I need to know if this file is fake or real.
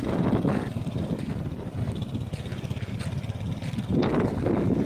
real